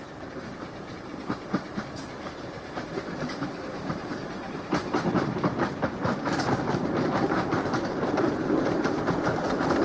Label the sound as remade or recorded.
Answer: remade